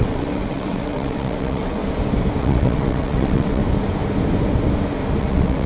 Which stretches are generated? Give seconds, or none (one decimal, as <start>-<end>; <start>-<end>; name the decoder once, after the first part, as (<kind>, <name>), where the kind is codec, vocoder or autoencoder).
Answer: 0.0-1.8 (vocoder, WaveNeXt); 2.4-3.6; 5.2-5.7